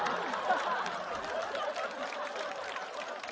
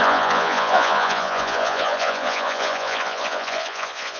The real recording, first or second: first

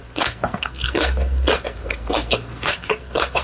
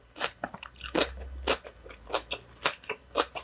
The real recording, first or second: second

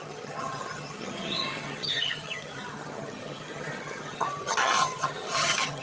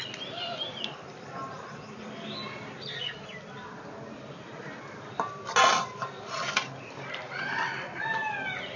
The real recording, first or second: second